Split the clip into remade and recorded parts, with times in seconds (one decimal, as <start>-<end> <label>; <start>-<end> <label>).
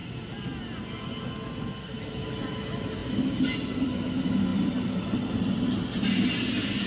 0.0-3.0 recorded; 3.0-3.9 remade; 3.9-6.9 recorded